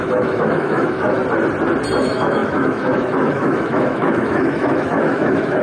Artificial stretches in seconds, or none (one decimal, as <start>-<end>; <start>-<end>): 0.0-1.2; 2.0-5.6